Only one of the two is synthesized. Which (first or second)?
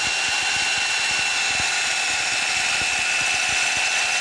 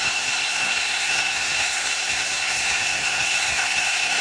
second